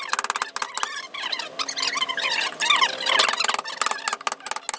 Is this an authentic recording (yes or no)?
yes